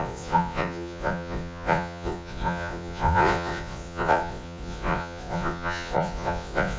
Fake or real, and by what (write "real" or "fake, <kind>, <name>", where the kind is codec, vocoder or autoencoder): fake, vocoder, Vocos